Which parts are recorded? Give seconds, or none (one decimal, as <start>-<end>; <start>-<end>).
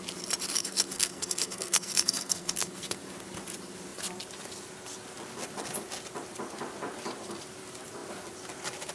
0.0-0.6; 3.0-8.9